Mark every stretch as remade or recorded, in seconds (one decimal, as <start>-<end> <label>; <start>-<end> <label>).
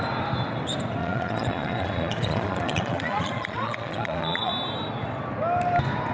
0.0-1.0 recorded; 1.0-4.5 remade; 4.5-6.1 recorded